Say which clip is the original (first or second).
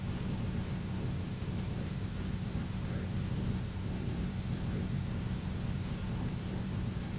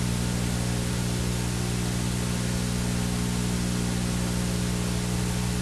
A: second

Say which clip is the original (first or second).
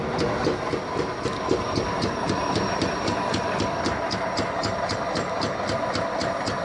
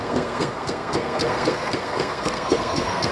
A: first